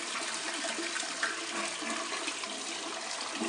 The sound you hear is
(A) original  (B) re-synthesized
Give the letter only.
A